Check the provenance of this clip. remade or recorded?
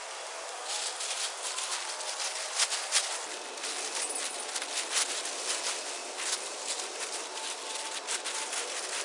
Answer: recorded